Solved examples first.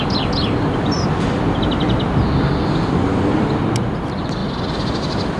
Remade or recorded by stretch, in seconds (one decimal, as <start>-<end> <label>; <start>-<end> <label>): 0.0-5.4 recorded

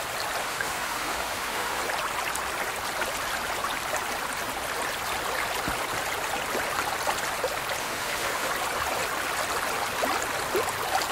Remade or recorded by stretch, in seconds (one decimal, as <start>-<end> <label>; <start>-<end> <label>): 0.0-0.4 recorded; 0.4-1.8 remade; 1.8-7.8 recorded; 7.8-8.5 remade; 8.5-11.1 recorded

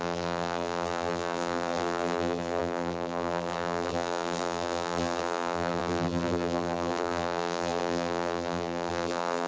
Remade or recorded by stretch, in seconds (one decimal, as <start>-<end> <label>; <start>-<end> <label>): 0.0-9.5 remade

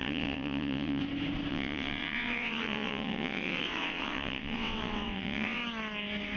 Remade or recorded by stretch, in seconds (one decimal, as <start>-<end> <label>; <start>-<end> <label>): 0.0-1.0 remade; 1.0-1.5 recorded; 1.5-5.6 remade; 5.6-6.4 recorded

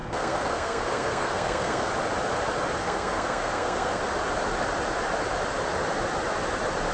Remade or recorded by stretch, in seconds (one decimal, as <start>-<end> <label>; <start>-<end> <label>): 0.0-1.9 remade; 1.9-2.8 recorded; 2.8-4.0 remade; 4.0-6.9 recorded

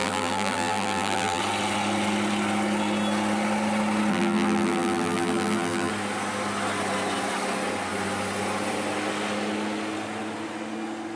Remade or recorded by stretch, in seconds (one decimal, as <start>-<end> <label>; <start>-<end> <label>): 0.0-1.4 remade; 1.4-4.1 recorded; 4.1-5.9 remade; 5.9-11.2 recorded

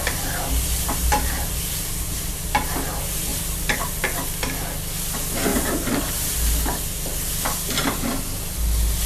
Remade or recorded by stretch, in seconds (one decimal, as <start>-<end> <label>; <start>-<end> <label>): 0.0-1.0 recorded; 1.0-2.6 remade; 2.6-3.3 recorded; 3.3-4.0 remade; 4.0-5.5 recorded; 5.5-6.1 remade; 6.1-9.1 recorded